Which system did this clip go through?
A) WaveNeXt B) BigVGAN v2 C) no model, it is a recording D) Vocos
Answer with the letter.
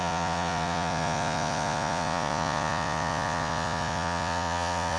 D